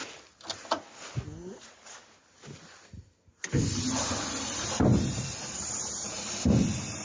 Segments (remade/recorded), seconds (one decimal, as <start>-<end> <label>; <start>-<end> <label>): 0.0-7.0 recorded